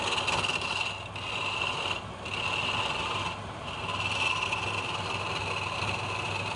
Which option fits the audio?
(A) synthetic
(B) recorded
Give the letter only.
B